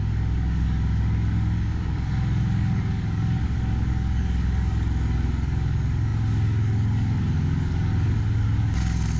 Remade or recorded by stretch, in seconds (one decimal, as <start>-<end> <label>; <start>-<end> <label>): 0.0-9.2 remade